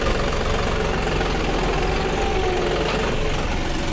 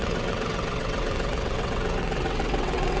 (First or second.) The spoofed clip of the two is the second